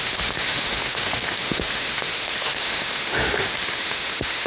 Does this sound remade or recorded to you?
remade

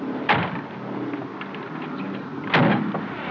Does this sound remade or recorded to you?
recorded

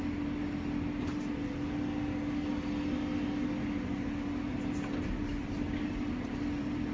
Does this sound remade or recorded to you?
recorded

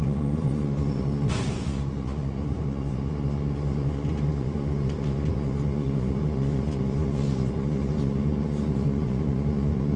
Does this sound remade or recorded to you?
remade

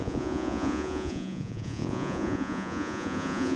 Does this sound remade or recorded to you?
remade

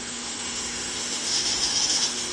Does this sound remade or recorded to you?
remade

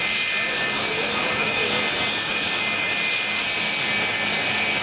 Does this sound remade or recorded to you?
recorded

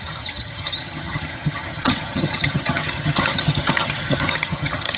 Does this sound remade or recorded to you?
remade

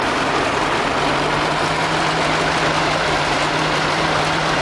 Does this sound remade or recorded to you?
remade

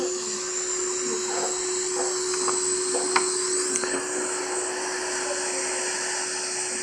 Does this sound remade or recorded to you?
recorded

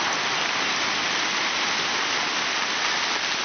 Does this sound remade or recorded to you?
recorded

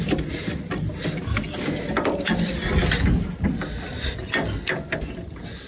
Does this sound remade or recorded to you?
recorded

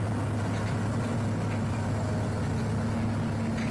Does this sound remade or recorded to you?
recorded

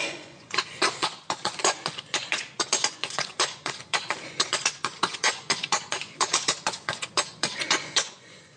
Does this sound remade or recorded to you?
remade